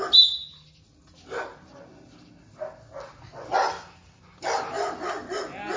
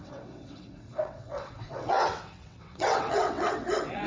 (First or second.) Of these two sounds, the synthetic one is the second